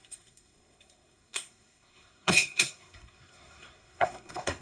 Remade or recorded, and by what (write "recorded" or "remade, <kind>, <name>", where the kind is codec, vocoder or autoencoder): remade, codec, SNAC